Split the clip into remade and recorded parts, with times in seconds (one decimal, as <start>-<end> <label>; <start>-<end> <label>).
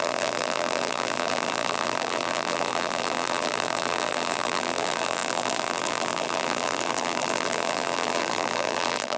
0.0-9.2 remade